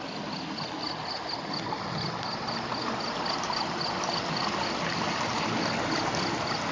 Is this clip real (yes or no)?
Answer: yes